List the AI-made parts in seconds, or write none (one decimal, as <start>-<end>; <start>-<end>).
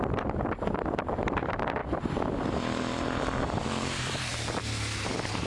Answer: 0.0-5.5